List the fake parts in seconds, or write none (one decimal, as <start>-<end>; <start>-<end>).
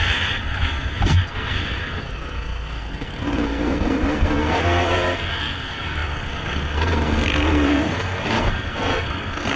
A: 0.0-9.6